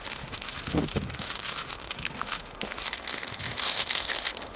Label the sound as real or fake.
fake